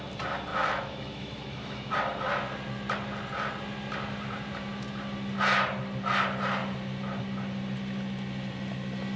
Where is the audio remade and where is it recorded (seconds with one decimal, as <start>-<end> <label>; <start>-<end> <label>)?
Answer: 0.0-0.5 recorded; 0.5-1.9 remade; 1.9-9.2 recorded